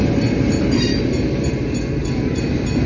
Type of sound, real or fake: real